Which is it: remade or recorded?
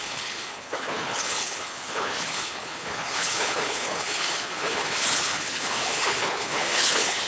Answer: remade